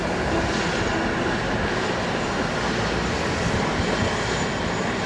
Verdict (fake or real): real